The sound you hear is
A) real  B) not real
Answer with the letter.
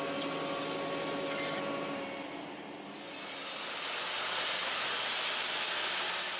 A